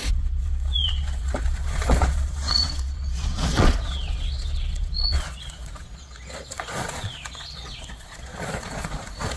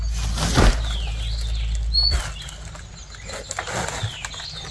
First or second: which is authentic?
second